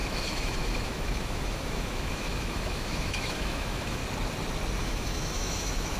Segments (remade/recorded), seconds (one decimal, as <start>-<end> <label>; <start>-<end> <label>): 0.0-4.0 remade; 4.0-4.8 recorded; 4.8-6.0 remade